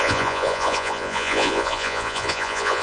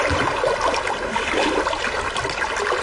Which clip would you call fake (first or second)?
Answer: first